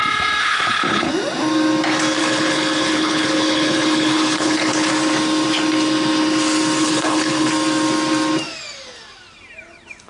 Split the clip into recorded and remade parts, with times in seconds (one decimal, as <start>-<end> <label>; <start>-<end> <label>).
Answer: 0.0-0.4 recorded; 0.4-1.1 remade; 1.1-2.2 recorded; 2.2-4.9 remade; 4.9-6.8 recorded; 6.8-7.5 remade; 7.5-10.1 recorded